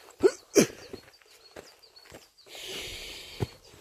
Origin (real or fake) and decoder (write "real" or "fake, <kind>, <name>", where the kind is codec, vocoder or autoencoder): fake, vocoder, BigVGAN v2